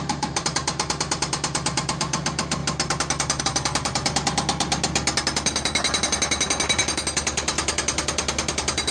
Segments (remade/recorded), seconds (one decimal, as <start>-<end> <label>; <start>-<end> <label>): 0.0-2.6 remade; 2.6-3.4 recorded; 3.4-4.0 remade; 4.0-8.5 recorded; 8.5-8.9 remade